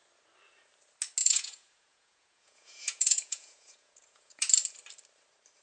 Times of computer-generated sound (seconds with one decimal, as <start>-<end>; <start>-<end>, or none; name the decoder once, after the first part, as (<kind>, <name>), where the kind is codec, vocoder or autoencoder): 1.2-4.5 (vocoder, Vocos)